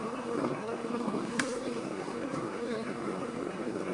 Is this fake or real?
fake